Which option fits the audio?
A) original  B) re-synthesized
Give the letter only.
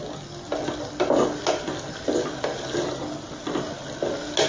A